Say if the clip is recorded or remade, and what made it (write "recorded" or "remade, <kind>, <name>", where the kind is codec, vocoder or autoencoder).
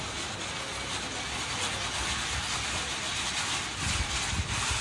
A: recorded